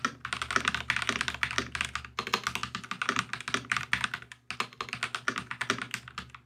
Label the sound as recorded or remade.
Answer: recorded